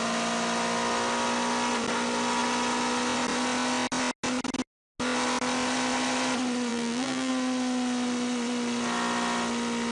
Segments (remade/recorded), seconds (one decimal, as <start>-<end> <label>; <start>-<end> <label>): 0.0-6.7 recorded; 6.7-7.3 remade; 7.3-9.9 recorded